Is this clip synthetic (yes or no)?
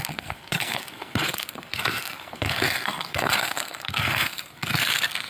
yes